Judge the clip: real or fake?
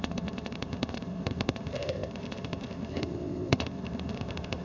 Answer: fake